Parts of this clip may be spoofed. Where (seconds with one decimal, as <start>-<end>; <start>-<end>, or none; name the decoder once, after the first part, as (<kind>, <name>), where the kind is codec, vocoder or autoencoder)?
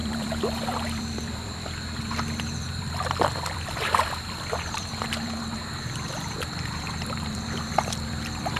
0.0-8.6 (vocoder, BigVGAN v2)